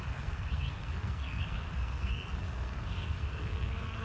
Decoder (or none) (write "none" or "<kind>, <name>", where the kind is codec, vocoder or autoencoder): codec, SNAC